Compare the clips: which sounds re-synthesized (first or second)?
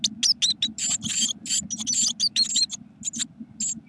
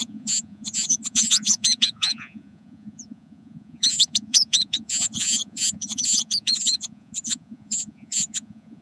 second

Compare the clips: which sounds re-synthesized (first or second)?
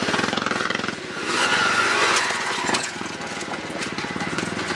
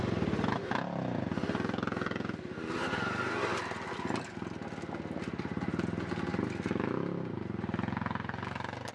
first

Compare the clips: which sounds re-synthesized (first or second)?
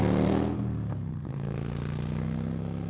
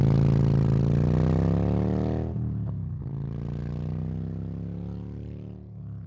first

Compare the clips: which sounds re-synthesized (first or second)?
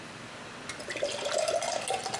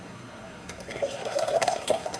second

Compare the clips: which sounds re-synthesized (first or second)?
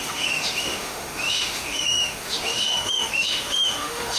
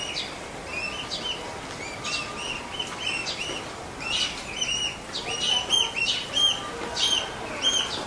first